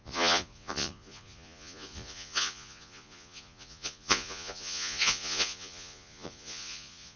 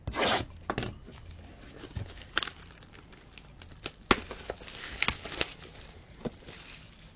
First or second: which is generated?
first